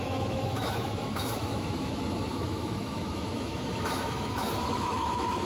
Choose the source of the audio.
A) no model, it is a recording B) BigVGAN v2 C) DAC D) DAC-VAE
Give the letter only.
D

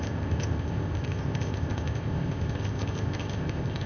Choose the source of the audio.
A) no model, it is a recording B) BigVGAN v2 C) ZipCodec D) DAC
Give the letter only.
C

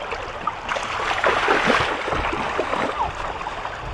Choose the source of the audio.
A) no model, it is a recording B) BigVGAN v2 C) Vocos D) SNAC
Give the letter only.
A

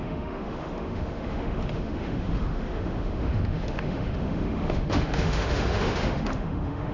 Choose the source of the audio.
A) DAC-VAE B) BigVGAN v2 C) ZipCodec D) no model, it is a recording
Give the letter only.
A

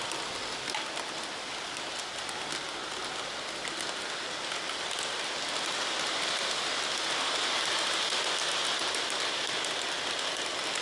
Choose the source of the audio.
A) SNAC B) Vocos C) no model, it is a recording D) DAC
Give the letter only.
C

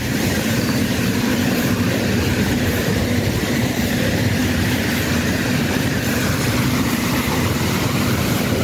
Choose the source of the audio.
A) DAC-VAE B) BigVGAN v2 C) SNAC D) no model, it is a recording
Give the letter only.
B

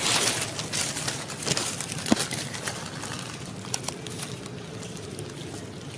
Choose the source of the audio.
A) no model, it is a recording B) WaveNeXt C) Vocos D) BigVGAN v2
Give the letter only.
A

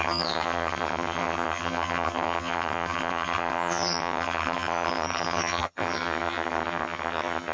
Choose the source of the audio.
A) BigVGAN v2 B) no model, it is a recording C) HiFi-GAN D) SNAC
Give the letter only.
C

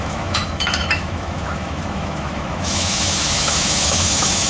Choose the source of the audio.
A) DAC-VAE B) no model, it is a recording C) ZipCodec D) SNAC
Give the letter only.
A